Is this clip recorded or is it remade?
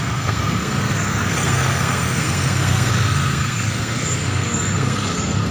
remade